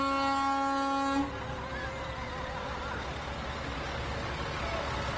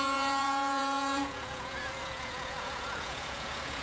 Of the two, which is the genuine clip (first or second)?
first